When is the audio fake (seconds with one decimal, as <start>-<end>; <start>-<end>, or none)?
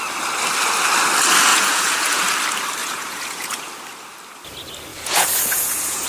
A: 1.5-2.2; 2.8-3.7; 4.9-6.1